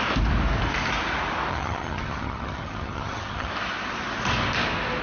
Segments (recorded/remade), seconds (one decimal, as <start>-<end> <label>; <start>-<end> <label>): 0.0-1.5 recorded; 1.5-3.5 remade; 3.5-5.0 recorded